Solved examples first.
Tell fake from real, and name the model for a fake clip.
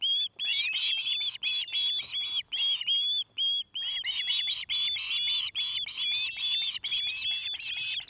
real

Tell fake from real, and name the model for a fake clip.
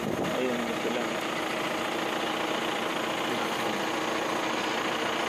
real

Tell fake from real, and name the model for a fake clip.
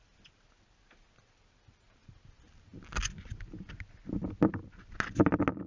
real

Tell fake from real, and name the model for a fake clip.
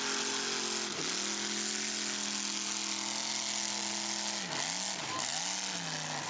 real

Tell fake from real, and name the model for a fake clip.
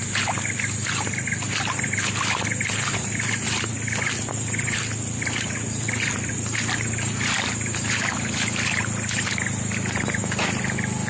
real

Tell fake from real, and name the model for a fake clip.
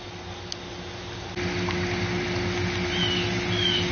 real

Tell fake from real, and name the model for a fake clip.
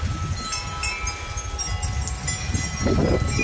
real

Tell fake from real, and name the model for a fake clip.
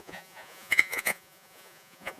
fake, vocoder, Vocos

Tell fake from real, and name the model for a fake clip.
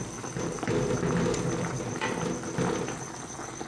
real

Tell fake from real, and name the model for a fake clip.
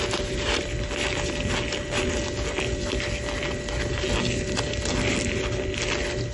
real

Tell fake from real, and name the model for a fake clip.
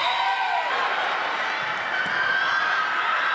real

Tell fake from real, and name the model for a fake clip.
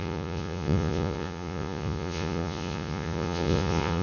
fake, vocoder, Vocos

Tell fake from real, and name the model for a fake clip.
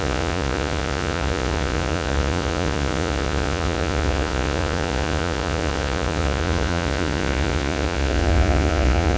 fake, vocoder, Vocos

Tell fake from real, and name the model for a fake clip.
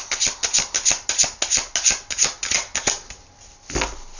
real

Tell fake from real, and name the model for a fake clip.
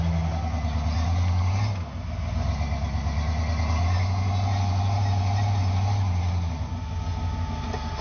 real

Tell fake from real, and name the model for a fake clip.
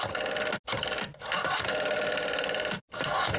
real